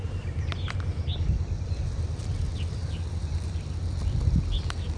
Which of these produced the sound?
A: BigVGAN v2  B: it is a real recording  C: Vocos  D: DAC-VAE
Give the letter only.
B